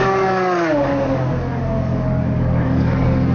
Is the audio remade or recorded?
remade